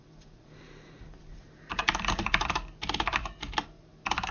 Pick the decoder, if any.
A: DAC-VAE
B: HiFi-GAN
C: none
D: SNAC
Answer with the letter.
C